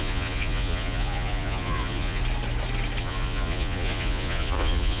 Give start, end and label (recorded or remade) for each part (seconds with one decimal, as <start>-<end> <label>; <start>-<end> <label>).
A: 0.0-2.2 remade; 2.2-3.0 recorded; 3.0-5.0 remade

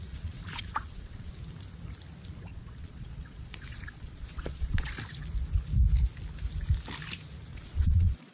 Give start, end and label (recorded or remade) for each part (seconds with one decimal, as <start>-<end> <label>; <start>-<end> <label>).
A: 0.0-1.3 remade; 1.3-2.5 recorded; 2.5-4.9 remade; 4.9-7.5 recorded; 7.5-8.3 remade

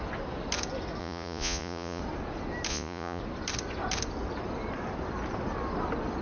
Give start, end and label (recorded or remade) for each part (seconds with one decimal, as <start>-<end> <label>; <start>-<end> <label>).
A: 0.0-1.0 recorded; 1.0-2.0 remade; 2.0-2.7 recorded; 2.7-3.2 remade; 3.2-6.2 recorded

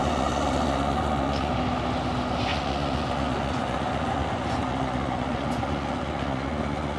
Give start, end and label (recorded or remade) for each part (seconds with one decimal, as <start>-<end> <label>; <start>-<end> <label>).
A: 0.0-1.5 remade; 1.5-2.5 recorded; 2.5-7.0 remade

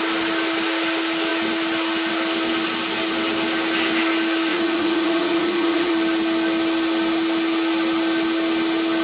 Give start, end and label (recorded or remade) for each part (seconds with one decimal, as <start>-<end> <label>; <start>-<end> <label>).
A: 0.0-4.5 recorded; 4.5-5.9 remade; 5.9-9.0 recorded

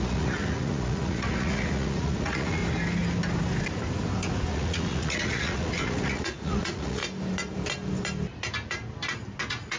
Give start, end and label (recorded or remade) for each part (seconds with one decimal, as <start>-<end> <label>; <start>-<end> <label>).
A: 0.0-2.6 remade; 2.6-4.5 recorded; 4.5-7.0 remade; 7.0-9.4 recorded; 9.4-9.8 remade

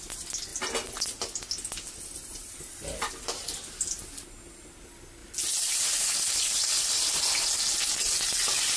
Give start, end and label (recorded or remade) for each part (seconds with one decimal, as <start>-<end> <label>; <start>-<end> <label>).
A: 0.0-8.8 recorded

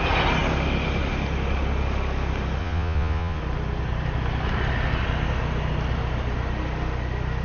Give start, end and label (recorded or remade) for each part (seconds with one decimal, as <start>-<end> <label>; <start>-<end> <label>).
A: 0.0-2.6 recorded; 2.6-3.4 remade; 3.4-7.4 recorded